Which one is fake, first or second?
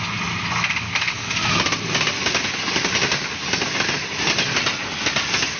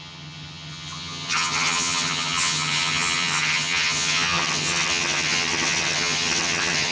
second